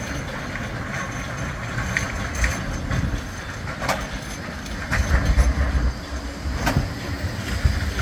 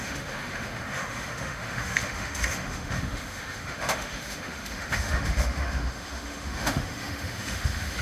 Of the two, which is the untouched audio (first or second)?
first